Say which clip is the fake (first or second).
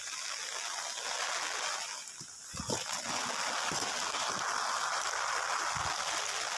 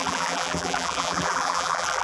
second